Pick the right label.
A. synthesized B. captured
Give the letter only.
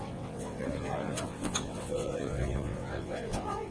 A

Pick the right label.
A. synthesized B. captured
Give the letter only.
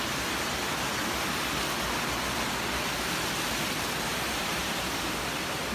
B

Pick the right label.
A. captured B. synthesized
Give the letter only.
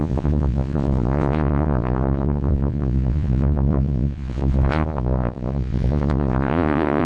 B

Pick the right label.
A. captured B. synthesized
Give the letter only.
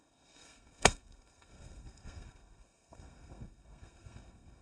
B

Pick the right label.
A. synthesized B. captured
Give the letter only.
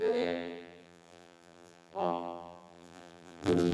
A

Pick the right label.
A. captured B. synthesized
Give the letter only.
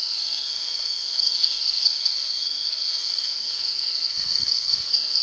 B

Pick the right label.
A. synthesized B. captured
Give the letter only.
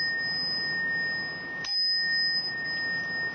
B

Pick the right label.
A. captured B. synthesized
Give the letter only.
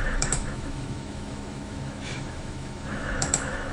B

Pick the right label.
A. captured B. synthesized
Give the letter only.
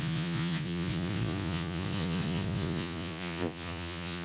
B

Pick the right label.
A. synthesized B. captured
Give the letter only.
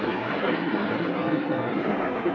A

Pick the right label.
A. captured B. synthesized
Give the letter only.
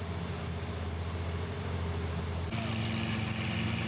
A